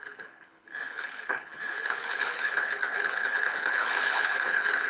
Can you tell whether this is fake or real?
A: fake